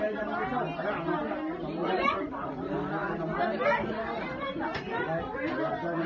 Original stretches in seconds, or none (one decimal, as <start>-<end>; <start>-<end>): 0.0-1.8; 2.3-6.1